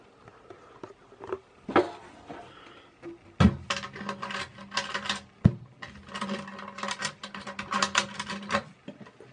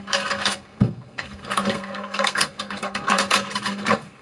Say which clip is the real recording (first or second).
first